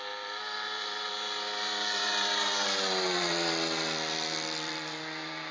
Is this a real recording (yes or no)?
no